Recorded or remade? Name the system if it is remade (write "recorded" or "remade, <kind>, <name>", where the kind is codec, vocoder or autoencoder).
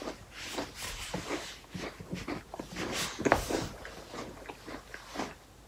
recorded